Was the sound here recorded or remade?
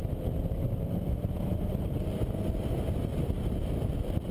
remade